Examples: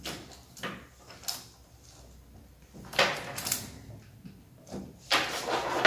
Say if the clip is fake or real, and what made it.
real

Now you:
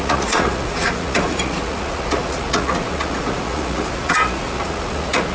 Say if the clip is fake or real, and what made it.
fake, vocoder, Vocos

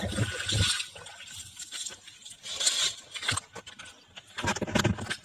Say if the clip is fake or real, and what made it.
real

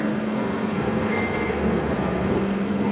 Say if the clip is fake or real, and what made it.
fake, codec, SNAC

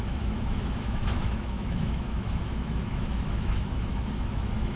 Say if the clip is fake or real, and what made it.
fake, autoencoder, DAC-VAE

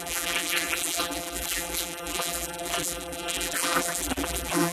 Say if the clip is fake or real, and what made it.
fake, vocoder, BigVGAN v2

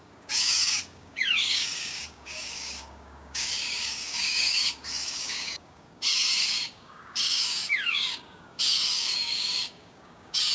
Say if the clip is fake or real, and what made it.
fake, codec, DAC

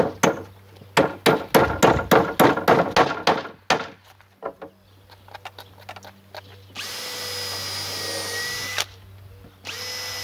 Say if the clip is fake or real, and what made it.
real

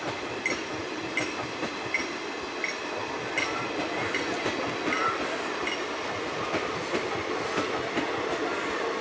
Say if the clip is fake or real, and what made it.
real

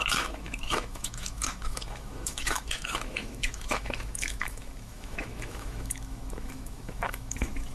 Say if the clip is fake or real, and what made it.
fake, autoencoder, DAC-VAE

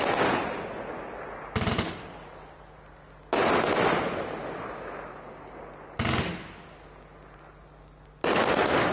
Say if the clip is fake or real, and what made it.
real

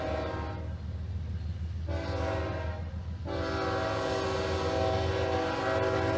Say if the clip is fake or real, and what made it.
real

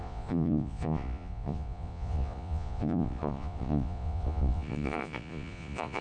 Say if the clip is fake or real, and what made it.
fake, vocoder, Vocos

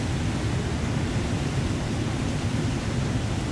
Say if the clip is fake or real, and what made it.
real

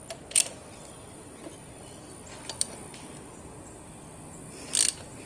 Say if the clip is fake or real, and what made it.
real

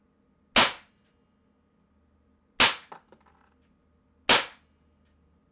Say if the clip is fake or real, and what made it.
real